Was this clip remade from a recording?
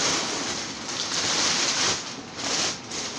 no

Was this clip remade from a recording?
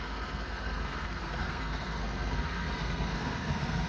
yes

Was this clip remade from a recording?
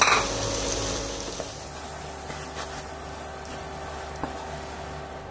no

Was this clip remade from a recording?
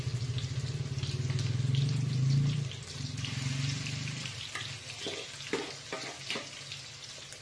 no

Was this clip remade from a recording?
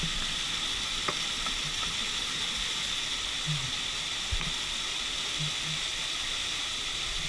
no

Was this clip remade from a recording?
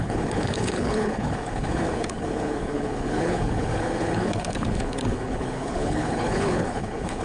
yes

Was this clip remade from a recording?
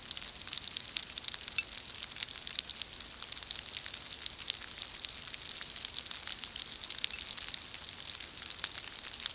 no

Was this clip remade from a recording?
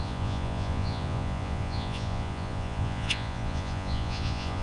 yes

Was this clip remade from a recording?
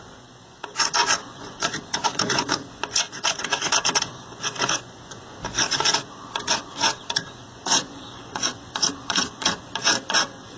yes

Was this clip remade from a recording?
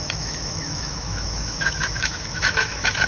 yes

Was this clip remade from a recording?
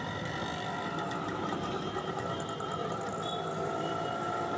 no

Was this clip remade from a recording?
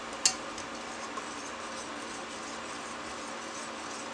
no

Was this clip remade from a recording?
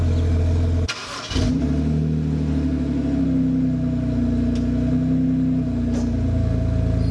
no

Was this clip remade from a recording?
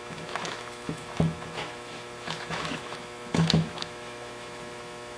yes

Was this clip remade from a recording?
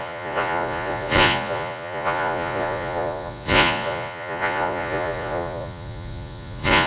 yes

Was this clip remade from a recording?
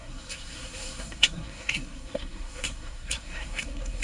yes